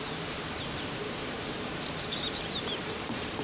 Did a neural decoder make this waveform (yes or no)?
yes